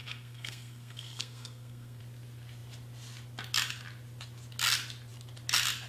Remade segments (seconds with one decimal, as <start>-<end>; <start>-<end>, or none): 0.0-2.0